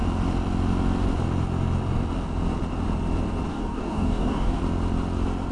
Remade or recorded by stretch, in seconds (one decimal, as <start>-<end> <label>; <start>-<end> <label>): 0.0-3.5 recorded; 3.5-4.6 remade; 4.6-5.5 recorded